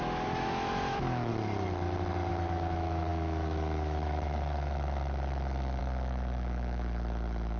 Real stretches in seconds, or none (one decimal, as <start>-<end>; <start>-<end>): 1.3-2.3